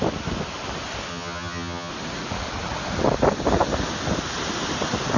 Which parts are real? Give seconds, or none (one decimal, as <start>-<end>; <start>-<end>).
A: 0.0-1.1; 1.9-5.2